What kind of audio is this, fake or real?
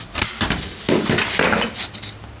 real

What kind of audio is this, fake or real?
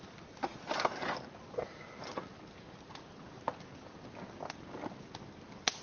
real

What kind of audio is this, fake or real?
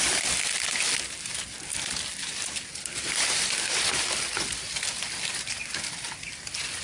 real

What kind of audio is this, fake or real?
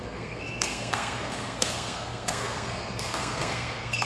fake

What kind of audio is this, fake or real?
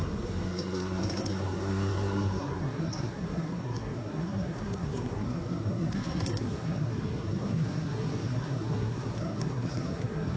fake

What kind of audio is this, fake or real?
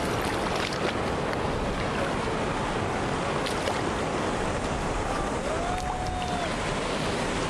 real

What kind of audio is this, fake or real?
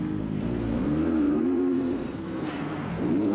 fake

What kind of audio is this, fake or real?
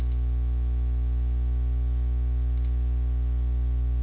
real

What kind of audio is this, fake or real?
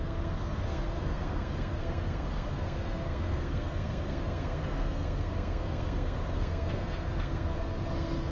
fake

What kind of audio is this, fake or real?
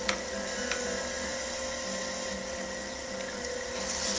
real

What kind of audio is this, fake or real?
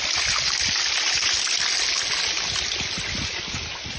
real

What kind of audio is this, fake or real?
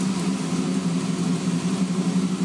real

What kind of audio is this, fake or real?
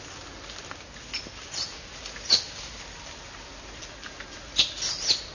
real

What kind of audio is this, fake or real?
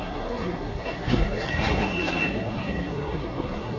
fake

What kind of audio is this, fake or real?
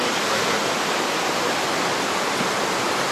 real